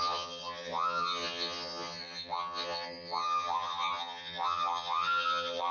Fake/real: fake